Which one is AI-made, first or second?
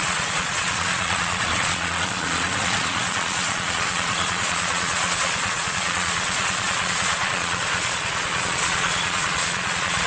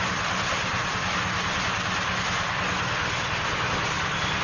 first